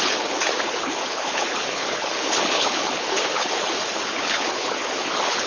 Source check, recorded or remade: remade